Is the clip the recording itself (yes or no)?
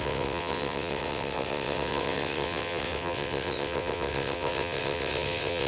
no